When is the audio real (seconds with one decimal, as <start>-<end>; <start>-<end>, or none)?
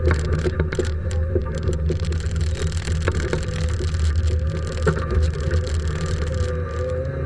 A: 0.0-1.4; 2.4-7.3